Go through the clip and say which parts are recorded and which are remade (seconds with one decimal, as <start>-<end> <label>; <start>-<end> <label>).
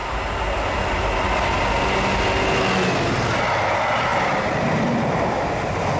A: 0.0-6.0 recorded